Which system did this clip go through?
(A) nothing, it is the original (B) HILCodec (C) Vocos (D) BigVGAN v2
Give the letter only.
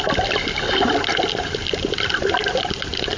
A